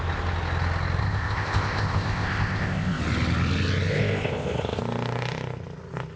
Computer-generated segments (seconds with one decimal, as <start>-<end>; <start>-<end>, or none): 1.0-3.0; 3.9-4.8